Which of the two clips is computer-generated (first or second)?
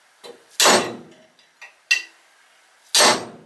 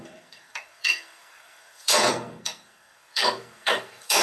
second